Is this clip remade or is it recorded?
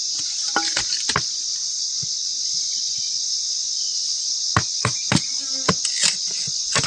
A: recorded